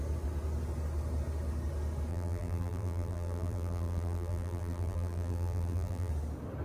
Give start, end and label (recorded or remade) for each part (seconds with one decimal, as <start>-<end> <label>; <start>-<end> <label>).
0.0-2.1 recorded; 2.1-6.1 remade; 6.1-6.6 recorded